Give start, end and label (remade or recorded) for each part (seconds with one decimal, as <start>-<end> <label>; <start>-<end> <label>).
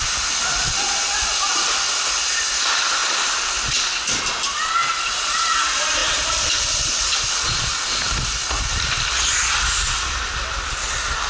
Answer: 0.0-3.0 recorded; 3.0-4.0 remade; 4.0-6.0 recorded; 6.0-7.3 remade; 7.3-11.3 recorded